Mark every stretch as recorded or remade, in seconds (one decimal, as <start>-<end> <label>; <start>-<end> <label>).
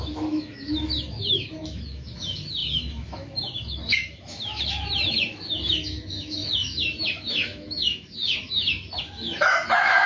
0.0-10.1 remade